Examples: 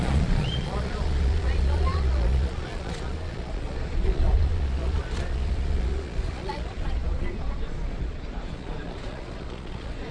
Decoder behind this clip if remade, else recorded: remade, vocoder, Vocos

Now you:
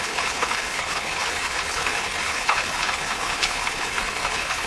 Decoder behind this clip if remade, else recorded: remade, codec, HILCodec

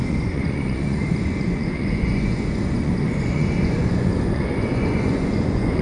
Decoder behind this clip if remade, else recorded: remade, vocoder, Vocos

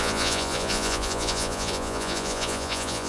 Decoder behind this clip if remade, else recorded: remade, vocoder, Vocos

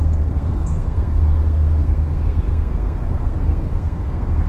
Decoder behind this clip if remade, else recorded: remade, codec, SNAC